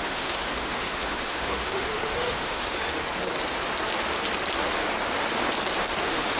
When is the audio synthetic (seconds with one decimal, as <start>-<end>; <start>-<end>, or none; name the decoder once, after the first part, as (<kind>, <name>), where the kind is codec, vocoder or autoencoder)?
0.0-2.8 (autoencoder, DAC-VAE); 6.0-6.4